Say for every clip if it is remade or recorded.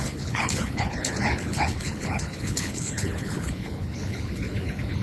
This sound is remade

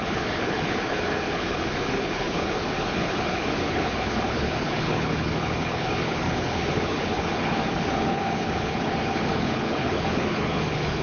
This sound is remade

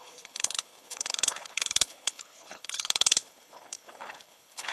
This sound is remade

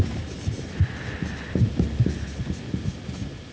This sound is recorded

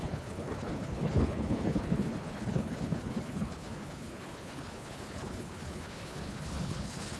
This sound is remade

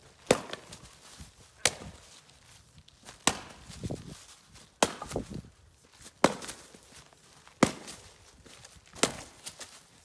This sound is recorded